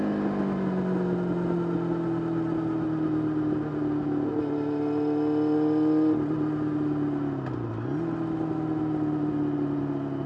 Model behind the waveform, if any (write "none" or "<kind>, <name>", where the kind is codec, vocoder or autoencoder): none